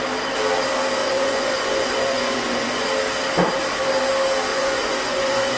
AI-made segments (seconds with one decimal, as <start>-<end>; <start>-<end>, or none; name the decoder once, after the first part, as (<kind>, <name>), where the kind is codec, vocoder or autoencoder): 1.0-2.9 (vocoder, Vocos); 4.5-5.6